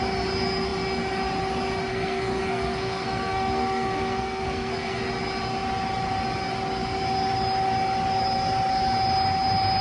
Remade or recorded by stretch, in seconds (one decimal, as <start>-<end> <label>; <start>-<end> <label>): 0.0-1.9 recorded; 1.9-5.0 remade; 5.0-9.8 recorded